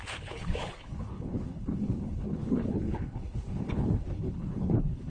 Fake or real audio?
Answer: fake